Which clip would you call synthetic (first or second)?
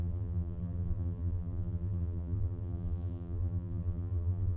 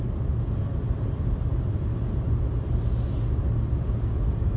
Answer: first